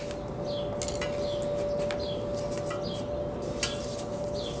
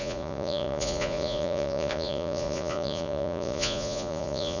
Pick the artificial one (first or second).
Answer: second